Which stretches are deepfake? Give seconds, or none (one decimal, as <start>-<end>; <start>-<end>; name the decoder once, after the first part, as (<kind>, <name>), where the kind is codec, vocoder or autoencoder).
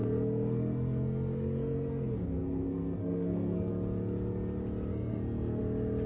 0.0-3.7 (codec, SNAC); 4.9-5.6